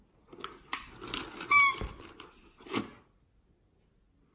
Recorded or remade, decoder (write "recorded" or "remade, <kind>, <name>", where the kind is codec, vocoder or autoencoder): recorded